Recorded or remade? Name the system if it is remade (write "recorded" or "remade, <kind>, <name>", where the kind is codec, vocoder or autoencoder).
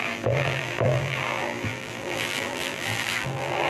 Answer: remade, vocoder, BigVGAN v2